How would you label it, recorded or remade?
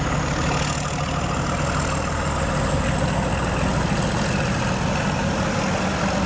recorded